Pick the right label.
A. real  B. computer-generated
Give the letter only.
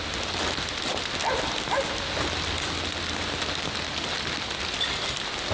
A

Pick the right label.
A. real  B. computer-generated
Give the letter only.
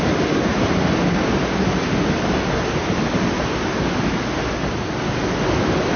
A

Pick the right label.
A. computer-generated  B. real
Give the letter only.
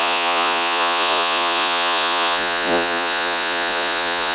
A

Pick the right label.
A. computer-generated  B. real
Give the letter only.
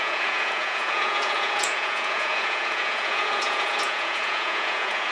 A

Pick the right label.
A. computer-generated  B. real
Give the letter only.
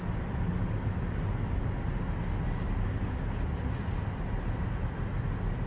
B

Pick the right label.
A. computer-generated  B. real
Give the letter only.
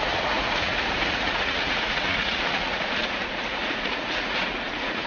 A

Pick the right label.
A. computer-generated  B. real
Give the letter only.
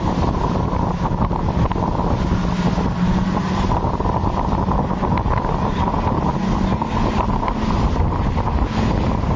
B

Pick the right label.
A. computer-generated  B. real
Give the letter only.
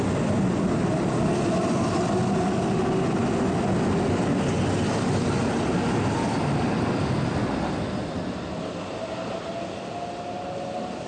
B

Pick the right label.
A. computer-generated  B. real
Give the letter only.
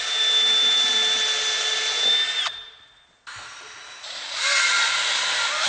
B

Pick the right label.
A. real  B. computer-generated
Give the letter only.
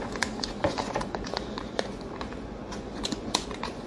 B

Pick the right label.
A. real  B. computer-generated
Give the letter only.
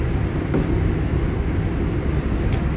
A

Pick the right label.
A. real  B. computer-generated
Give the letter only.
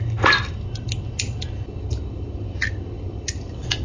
A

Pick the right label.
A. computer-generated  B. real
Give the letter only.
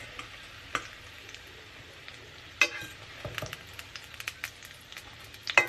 B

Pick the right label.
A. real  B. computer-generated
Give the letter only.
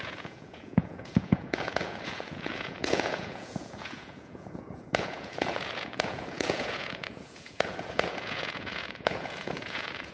B